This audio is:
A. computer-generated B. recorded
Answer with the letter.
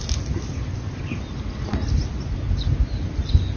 B